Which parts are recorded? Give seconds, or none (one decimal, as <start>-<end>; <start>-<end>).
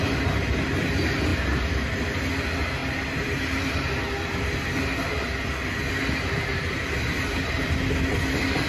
0.0-8.7